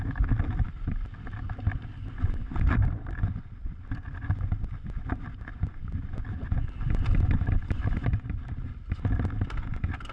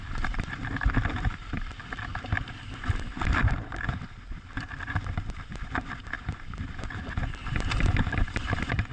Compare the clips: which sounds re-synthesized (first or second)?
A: second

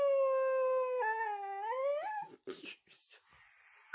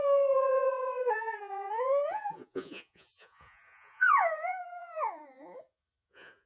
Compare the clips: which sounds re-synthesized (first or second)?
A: second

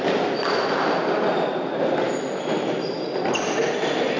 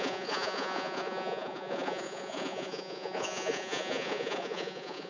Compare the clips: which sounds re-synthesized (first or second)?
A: second